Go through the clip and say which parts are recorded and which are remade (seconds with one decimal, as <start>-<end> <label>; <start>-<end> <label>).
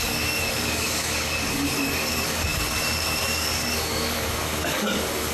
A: 0.0-5.3 remade